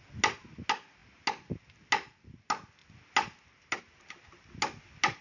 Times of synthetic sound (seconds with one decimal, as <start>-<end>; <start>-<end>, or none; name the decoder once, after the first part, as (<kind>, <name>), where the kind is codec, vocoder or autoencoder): none